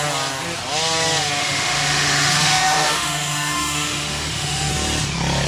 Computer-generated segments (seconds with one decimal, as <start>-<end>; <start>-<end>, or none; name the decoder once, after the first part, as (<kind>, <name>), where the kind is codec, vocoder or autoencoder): 1.4-4.7 (autoencoder, DAC-VAE)